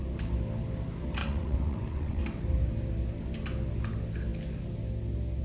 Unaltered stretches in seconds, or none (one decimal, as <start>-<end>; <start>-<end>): 0.0-1.2; 2.2-5.4